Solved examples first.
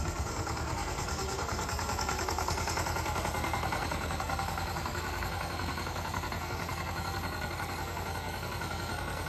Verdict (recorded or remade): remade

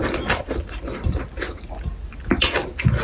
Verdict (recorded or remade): recorded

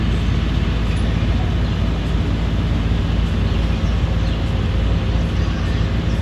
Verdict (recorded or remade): recorded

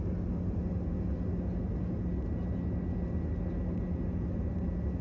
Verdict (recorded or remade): recorded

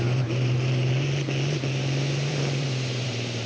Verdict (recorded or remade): remade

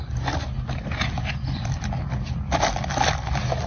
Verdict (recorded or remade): recorded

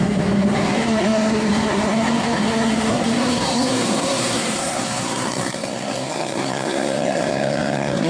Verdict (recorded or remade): remade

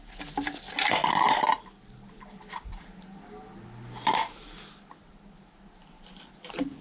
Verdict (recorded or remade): recorded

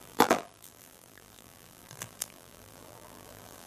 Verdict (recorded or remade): remade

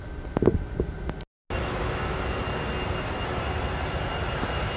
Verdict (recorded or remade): recorded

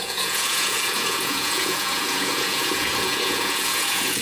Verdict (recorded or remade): remade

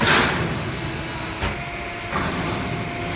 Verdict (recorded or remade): recorded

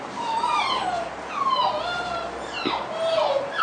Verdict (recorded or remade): recorded